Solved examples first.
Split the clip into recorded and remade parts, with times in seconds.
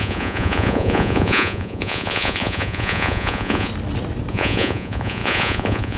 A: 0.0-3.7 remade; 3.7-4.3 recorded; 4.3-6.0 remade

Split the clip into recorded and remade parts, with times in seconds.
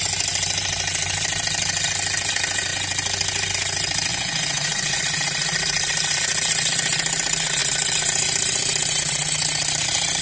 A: 0.0-4.1 recorded; 4.1-5.0 remade; 5.0-10.2 recorded